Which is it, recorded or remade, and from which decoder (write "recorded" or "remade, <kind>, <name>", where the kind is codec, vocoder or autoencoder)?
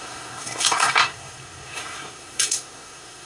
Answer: remade, codec, SNAC